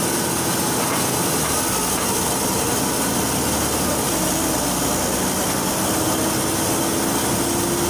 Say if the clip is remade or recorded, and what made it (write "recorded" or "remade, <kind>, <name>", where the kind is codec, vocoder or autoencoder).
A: recorded